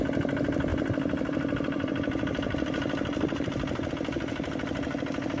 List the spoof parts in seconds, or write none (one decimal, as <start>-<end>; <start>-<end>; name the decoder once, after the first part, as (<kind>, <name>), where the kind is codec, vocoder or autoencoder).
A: 0.7-3.9 (vocoder, BigVGAN v2)